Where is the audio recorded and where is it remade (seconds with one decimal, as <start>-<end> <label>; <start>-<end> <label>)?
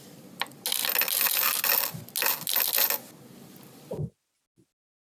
0.0-5.1 recorded